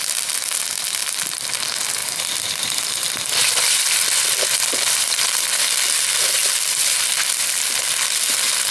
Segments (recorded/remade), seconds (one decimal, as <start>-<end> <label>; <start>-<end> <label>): 0.0-1.0 recorded; 1.0-1.5 remade; 1.5-2.0 recorded; 2.0-5.7 remade; 5.7-8.7 recorded